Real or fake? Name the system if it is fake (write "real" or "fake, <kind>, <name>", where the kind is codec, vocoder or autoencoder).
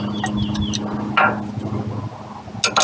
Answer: real